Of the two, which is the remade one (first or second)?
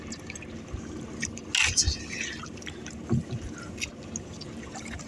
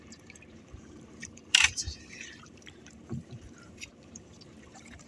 second